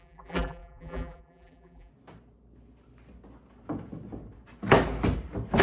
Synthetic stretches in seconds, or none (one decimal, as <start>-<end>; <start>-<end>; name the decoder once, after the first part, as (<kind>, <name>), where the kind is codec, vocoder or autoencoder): 0.0-1.9 (vocoder, BigVGAN v2)